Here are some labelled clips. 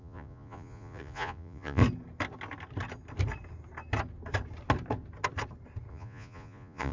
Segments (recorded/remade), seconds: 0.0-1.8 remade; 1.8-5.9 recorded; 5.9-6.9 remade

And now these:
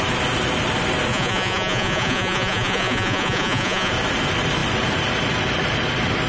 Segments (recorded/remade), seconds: 0.0-1.1 recorded; 1.1-3.9 remade; 3.9-6.3 recorded

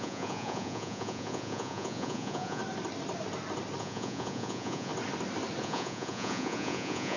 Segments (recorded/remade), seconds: 0.0-2.6 remade; 2.6-3.8 recorded; 3.8-4.9 remade; 4.9-5.6 recorded; 5.6-7.2 remade